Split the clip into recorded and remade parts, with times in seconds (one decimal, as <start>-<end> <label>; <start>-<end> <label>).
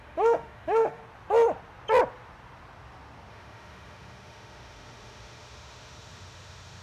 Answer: 0.0-1.0 remade; 1.0-3.3 recorded; 3.3-6.8 remade